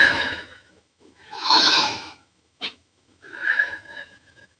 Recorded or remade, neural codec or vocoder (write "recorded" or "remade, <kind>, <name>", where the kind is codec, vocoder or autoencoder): remade, autoencoder, DAC-VAE